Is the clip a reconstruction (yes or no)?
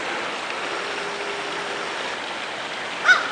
no